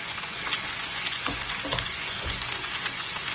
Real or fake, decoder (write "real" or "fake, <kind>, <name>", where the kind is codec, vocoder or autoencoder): fake, vocoder, Vocos